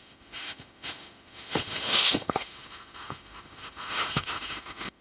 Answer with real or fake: fake